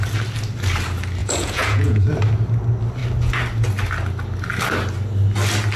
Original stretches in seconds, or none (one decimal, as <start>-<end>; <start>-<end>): 0.0-1.2; 2.1-5.8